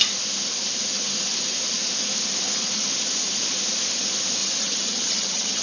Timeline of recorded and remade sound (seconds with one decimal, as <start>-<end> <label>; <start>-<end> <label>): 0.0-4.4 recorded; 4.4-5.6 remade